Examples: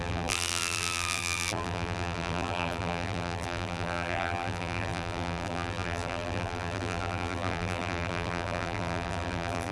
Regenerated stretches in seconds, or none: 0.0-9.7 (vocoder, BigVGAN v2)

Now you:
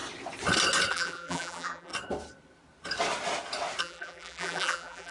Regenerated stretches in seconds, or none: 0.9-1.9 (vocoder, BigVGAN v2); 3.8-5.1